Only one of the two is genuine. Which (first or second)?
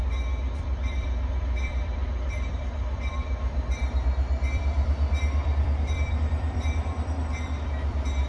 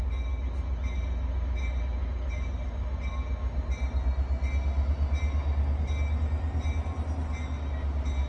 second